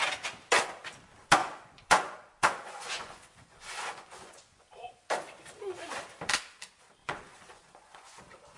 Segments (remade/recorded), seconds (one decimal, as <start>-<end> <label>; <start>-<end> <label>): 0.0-1.4 recorded; 1.4-5.0 remade; 5.0-7.0 recorded; 7.0-8.2 remade; 8.2-8.6 recorded